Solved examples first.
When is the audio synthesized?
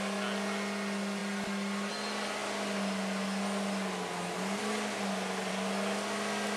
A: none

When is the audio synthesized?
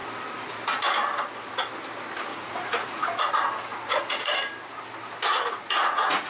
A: 2.3-3.3; 3.7-4.3; 5.3-6.3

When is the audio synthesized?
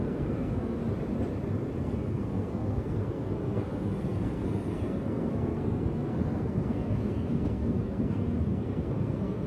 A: 0.0-0.8; 1.8-9.5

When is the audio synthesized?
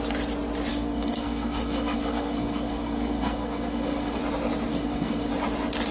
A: 0.7-4.2; 4.7-5.3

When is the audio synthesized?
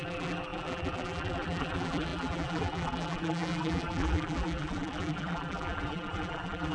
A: 0.0-6.7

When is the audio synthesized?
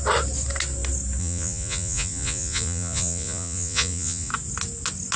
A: 1.2-4.3